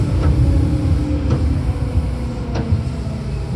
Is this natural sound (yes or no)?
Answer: yes